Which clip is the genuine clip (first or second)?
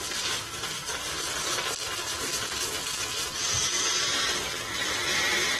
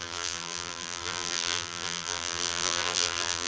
first